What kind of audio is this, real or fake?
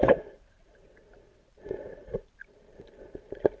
fake